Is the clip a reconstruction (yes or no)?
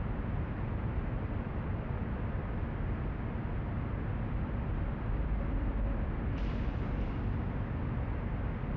no